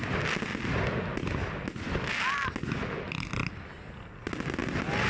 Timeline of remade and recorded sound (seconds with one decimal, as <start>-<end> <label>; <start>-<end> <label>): 0.0-5.1 recorded